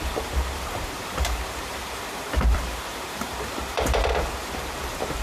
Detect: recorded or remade remade